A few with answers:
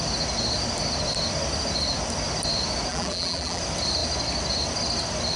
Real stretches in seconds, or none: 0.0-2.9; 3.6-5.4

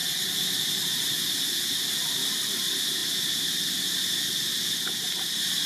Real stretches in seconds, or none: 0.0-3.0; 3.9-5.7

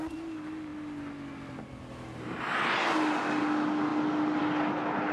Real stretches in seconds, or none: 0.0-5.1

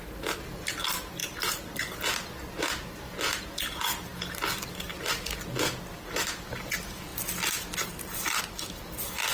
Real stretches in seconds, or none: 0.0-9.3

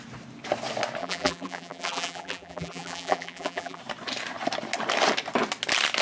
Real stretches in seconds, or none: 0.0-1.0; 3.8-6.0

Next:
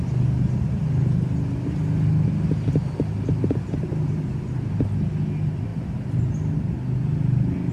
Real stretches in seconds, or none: 0.0-7.7